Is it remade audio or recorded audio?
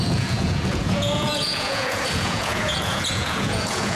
remade